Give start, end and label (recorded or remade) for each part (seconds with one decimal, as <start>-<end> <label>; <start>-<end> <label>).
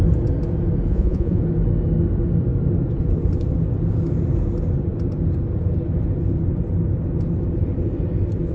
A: 0.0-0.9 recorded; 0.9-1.4 remade; 1.4-8.5 recorded